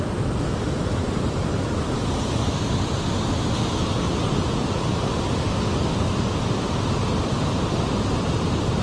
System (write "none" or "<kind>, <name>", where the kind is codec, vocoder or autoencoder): none